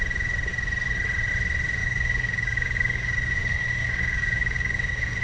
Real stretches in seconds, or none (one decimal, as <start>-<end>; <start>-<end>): 0.0-1.8

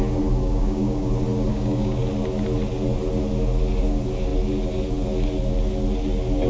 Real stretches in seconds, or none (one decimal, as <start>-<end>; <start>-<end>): 0.0-0.4; 1.1-1.5; 2.0-6.5